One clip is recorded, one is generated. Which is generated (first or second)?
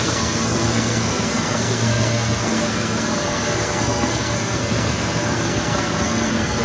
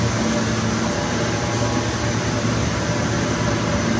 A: first